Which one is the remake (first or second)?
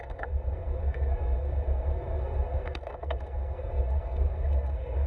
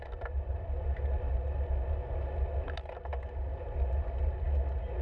first